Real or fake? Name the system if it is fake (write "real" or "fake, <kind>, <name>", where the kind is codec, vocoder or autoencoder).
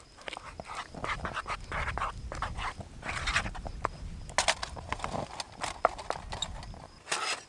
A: real